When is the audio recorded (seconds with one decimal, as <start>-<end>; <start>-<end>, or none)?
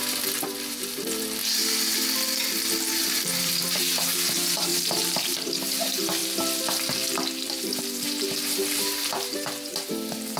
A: 1.4-2.9; 6.2-7.5